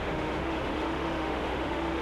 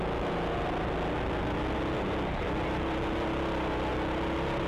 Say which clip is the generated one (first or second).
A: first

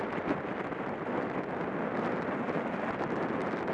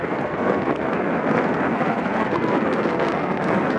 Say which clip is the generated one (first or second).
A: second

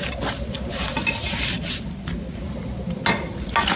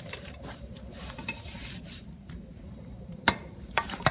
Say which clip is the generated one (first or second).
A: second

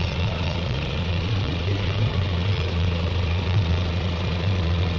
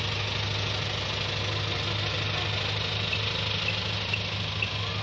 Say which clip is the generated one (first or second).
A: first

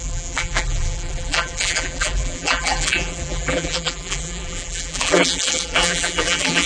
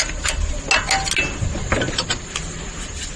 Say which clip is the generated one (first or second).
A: first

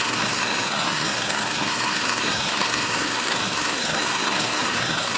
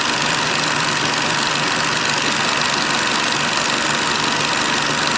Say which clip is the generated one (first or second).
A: first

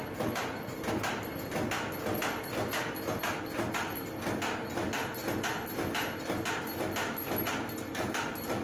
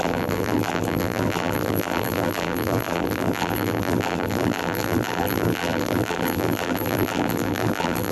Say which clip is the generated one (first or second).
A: second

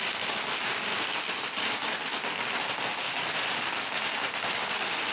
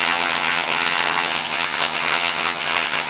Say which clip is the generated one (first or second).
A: second